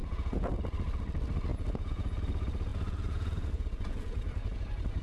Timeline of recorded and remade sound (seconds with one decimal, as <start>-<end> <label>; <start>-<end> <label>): 0.0-0.6 remade; 0.6-1.5 recorded; 1.5-2.2 remade; 2.2-2.7 recorded; 2.7-4.6 remade; 4.6-5.0 recorded